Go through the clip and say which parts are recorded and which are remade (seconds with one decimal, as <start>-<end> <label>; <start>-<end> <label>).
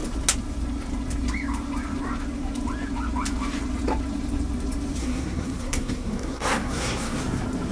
0.0-5.0 recorded; 5.0-7.2 remade; 7.2-7.7 recorded